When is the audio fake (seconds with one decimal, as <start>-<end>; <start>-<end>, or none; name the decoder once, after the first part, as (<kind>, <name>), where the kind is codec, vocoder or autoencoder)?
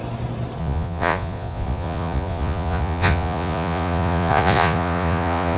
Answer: 0.6-5.6 (vocoder, Vocos)